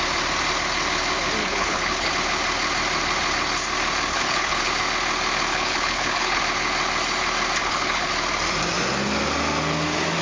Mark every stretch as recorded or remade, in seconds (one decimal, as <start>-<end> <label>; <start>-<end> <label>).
0.0-1.4 recorded; 1.4-2.1 remade; 2.1-4.1 recorded; 4.1-4.7 remade; 4.7-5.5 recorded; 5.5-6.4 remade; 6.4-7.6 recorded; 7.6-8.1 remade; 8.1-10.2 recorded